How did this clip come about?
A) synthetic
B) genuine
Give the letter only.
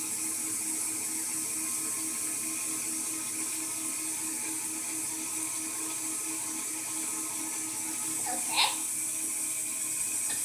B